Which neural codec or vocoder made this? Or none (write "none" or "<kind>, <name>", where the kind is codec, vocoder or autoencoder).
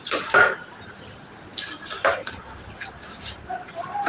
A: vocoder, BigVGAN v2